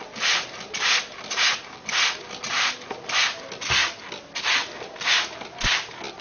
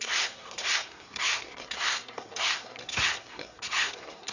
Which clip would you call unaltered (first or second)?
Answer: first